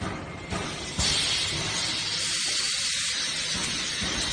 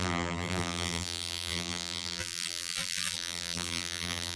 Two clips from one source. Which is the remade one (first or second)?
second